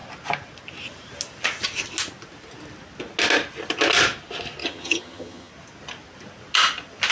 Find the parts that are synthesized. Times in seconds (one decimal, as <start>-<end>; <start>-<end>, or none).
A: 4.6-5.5